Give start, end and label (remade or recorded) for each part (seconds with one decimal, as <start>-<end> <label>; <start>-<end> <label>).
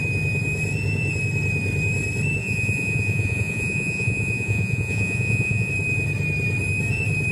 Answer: 0.0-2.4 recorded; 2.4-5.7 remade; 5.7-7.3 recorded